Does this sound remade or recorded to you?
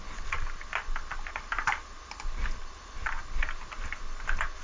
recorded